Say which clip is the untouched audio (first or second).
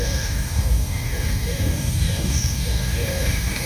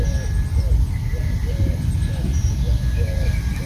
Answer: second